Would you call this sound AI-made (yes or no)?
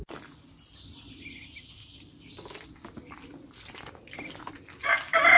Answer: no